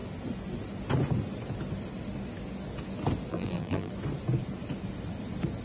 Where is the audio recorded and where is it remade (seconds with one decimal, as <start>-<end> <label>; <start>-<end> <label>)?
0.0-3.3 recorded; 3.3-3.9 remade; 3.9-5.6 recorded